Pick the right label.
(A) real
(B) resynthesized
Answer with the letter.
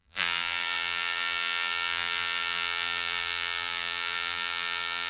B